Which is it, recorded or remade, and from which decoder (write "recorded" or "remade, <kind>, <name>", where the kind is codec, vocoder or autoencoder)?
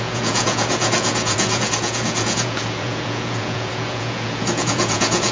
remade, vocoder, Vocos